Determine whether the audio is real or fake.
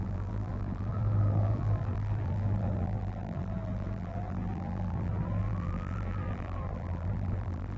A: fake